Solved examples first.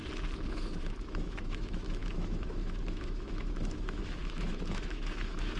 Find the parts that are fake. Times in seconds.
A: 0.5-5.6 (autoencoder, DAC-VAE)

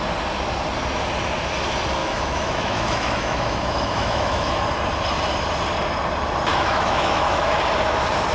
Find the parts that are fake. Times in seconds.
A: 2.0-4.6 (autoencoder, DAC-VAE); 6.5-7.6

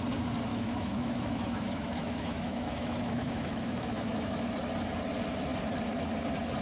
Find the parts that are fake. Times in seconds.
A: 0.5-4.5 (autoencoder, DAC-VAE)